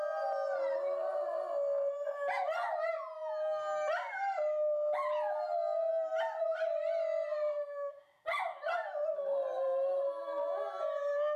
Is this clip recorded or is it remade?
recorded